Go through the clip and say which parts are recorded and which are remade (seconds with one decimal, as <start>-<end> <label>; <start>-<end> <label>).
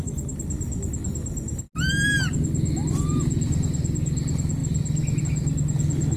0.0-6.2 recorded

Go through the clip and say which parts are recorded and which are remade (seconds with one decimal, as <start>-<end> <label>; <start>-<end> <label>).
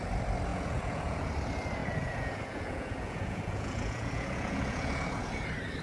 0.0-0.5 recorded; 0.5-1.3 remade; 1.3-1.8 recorded; 1.8-5.3 remade; 5.3-5.8 recorded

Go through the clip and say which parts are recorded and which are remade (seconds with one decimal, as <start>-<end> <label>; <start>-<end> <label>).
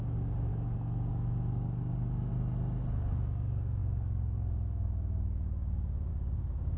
0.0-0.5 remade; 0.5-1.1 recorded; 1.1-2.3 remade; 2.3-3.1 recorded; 3.1-6.8 remade